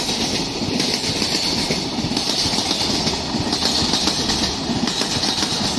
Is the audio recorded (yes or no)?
yes